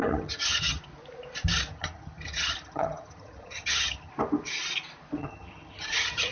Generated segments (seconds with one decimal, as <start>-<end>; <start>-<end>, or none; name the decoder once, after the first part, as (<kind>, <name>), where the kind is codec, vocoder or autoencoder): 0.0-0.8 (vocoder, HiFi-GAN); 1.7-4.1; 5.2-6.3